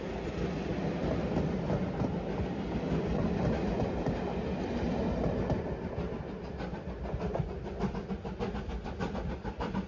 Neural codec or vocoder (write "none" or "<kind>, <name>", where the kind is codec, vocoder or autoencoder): none